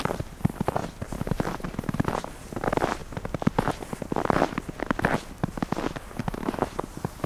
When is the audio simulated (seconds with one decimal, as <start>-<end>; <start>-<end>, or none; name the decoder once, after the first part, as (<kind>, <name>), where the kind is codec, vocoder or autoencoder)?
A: none